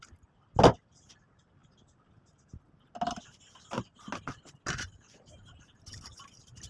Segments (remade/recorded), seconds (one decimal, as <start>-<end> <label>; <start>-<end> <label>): 0.0-6.7 recorded